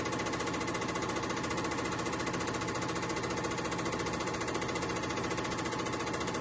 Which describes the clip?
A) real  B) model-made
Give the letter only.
A